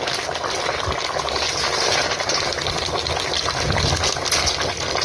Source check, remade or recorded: recorded